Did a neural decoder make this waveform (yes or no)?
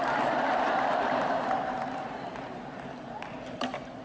no